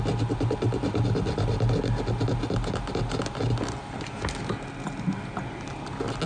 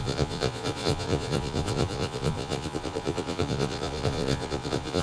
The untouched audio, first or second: first